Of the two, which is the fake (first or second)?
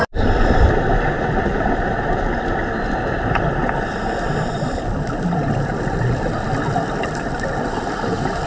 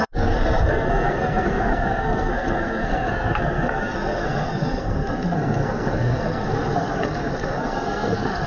second